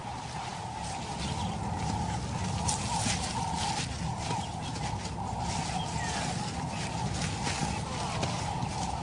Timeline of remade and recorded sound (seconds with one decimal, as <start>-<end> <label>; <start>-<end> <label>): 0.0-9.0 recorded